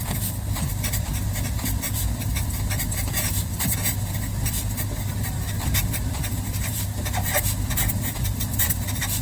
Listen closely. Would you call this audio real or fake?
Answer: fake